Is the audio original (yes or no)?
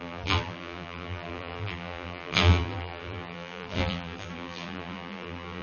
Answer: no